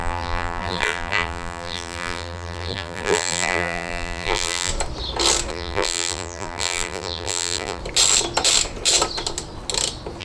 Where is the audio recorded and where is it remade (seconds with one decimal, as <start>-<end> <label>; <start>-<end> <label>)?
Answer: 0.0-4.7 remade; 4.7-5.5 recorded; 5.5-7.8 remade; 7.8-10.2 recorded